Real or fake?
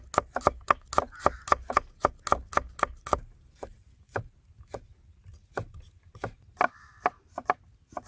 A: real